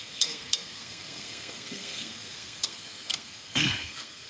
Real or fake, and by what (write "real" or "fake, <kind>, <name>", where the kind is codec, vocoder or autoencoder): fake, codec, SNAC